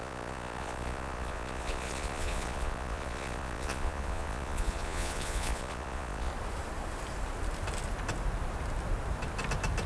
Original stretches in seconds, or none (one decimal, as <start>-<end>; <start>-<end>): 6.3-9.9